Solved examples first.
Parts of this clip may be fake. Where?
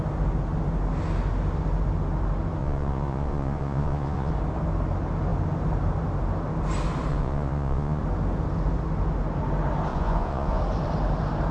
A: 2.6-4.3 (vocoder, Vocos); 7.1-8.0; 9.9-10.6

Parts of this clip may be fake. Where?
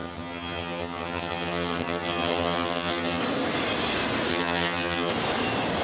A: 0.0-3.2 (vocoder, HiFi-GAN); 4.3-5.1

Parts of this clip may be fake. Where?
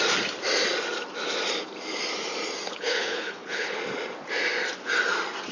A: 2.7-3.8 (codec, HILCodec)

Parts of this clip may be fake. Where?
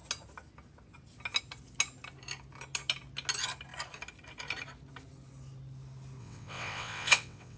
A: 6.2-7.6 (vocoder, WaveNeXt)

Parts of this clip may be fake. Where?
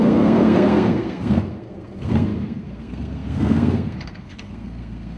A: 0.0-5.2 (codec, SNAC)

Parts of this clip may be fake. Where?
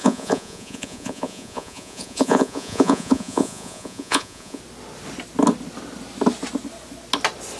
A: 0.0-4.6 (vocoder, Vocos)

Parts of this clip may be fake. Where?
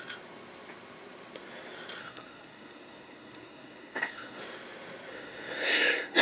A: 2.0-4.4 (codec, SNAC); 5.1-6.2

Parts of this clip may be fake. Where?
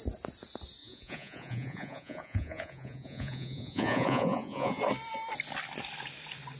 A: 0.8-4.8 (vocoder, Vocos)